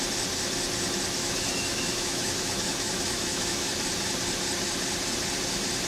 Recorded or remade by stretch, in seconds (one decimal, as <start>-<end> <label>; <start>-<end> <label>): 0.0-1.2 recorded; 1.2-3.7 remade; 3.7-5.9 recorded